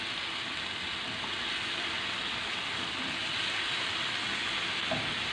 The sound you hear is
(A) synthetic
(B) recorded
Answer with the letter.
B